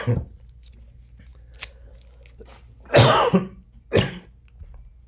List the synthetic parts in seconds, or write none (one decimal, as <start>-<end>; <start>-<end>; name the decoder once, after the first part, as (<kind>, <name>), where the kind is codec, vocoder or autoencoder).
none